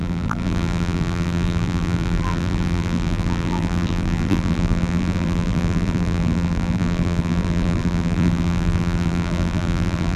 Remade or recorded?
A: remade